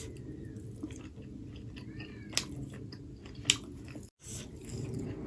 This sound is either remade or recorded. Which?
recorded